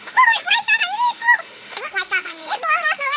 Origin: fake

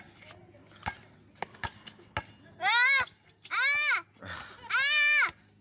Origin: real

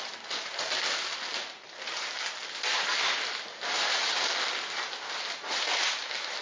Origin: real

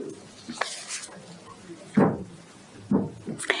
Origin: real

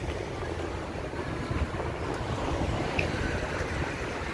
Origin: real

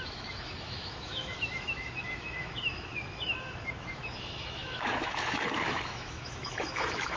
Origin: fake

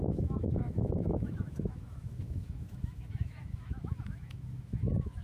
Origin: fake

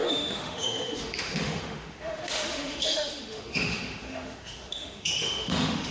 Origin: fake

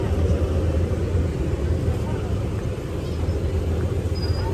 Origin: real